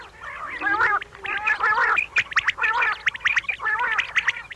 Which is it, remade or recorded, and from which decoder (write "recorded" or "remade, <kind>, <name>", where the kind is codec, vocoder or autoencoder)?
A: recorded